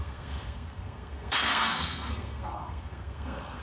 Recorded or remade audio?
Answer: remade